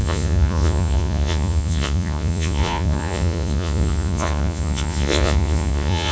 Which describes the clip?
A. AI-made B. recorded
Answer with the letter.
A